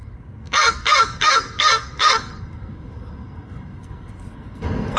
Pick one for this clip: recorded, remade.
remade